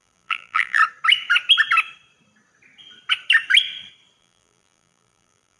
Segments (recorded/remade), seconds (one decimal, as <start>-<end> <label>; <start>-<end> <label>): 0.0-0.8 remade; 0.8-4.2 recorded; 4.2-5.6 remade